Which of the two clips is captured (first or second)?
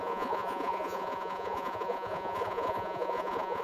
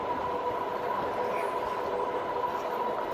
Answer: second